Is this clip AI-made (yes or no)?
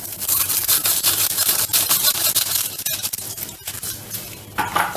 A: yes